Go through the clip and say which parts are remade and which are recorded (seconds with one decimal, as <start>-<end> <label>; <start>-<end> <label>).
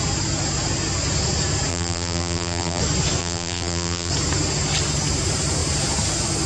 0.0-1.7 recorded; 1.7-2.8 remade; 2.8-3.2 recorded; 3.2-4.1 remade; 4.1-6.5 recorded